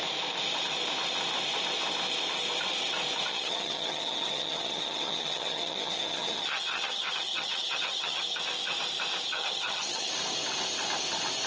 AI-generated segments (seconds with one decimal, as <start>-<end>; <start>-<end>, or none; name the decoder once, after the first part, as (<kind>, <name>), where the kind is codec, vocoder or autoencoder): 3.3-8.4 (vocoder, HiFi-GAN); 9.3-10.1